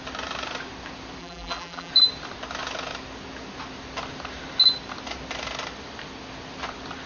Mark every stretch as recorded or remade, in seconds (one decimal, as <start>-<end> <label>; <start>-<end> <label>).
0.0-1.2 recorded; 1.2-1.9 remade; 1.9-7.1 recorded